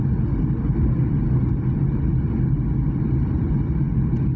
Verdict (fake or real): real